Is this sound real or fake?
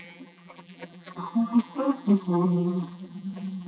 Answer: fake